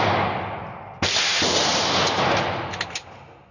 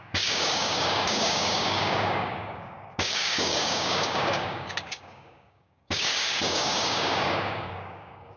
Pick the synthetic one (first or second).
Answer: second